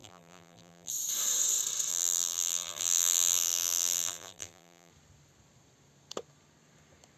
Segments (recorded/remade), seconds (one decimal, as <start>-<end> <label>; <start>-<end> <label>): 0.0-0.9 remade; 0.9-1.9 recorded; 1.9-4.9 remade; 4.9-7.2 recorded